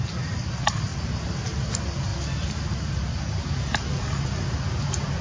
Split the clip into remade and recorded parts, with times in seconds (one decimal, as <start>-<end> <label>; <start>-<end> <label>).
0.0-5.2 recorded